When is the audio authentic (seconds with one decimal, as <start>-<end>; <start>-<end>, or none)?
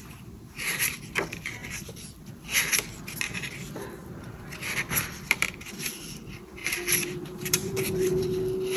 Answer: 0.0-1.6; 2.3-4.0; 5.9-6.6; 8.4-8.8